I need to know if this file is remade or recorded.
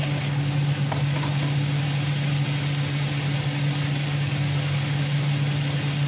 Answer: recorded